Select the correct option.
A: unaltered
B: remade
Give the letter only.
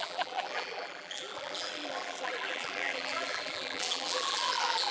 B